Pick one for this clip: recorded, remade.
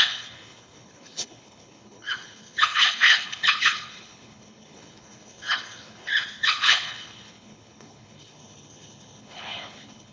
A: remade